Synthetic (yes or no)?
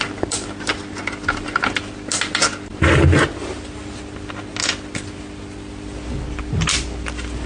no